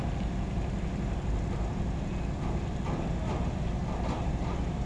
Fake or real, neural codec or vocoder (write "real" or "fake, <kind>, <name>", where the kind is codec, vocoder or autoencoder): real